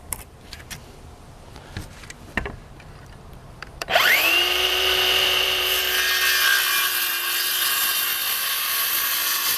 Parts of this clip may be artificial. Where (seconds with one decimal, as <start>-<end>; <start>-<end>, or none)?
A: 3.4-5.8